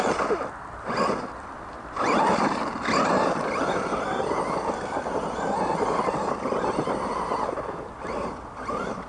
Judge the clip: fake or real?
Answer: real